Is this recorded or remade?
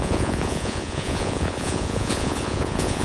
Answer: remade